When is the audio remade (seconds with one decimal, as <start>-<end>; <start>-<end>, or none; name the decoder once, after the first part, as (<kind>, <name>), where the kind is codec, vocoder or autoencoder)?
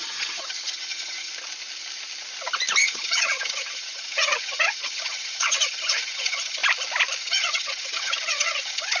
0.0-1.3 (vocoder, HiFi-GAN); 2.8-6.6; 7.2-9.0